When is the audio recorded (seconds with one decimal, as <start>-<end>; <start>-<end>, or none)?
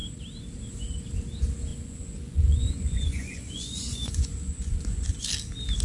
0.0-1.7; 5.2-5.8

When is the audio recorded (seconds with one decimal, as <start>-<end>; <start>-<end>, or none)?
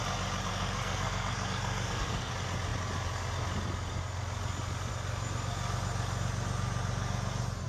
0.0-0.5; 2.3-7.7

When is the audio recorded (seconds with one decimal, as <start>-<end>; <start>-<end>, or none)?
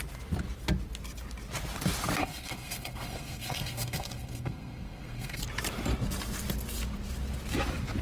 0.0-2.2; 5.4-8.0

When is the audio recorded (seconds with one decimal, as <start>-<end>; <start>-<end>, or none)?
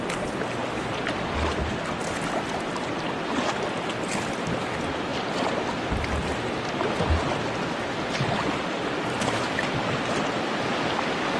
0.0-11.4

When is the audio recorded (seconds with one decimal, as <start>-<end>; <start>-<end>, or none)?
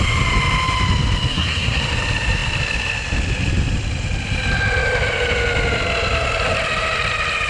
0.0-1.3; 1.8-7.5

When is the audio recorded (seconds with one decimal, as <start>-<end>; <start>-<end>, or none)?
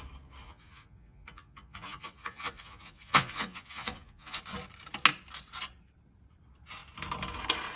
0.0-0.4; 4.4-7.8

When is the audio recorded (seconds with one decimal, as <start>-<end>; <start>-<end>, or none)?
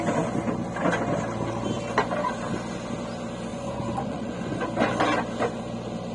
0.0-3.5; 4.6-6.1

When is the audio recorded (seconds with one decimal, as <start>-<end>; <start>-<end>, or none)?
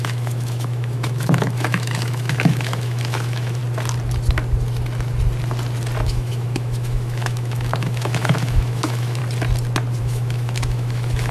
3.6-6.0; 9.2-10.0